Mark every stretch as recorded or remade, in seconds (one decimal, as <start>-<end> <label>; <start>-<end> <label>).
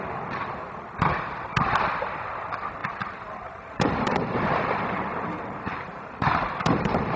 0.0-2.8 recorded; 2.8-7.2 remade